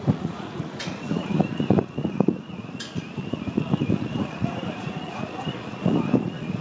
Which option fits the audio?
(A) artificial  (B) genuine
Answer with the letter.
A